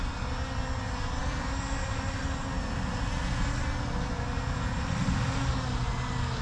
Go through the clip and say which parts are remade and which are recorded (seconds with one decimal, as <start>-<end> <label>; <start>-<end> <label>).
0.0-6.4 recorded